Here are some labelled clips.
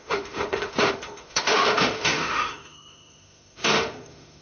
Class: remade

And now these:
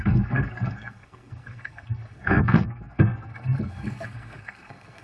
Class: remade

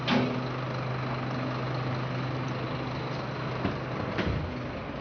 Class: recorded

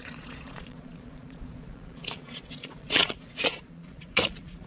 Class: remade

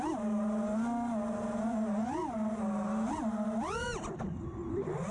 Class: recorded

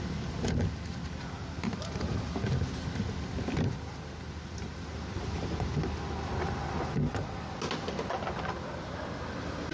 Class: recorded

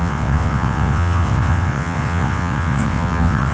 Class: remade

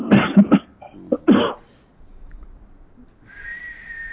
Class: recorded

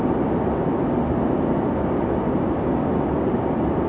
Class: recorded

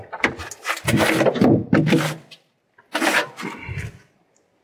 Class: remade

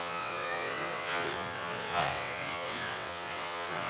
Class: remade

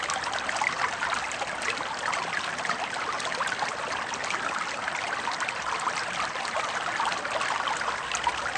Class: recorded